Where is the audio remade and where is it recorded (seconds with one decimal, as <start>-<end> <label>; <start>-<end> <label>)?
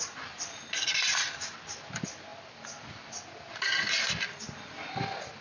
0.0-5.4 recorded